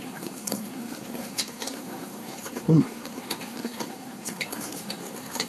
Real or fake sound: fake